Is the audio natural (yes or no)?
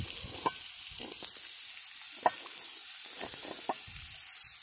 yes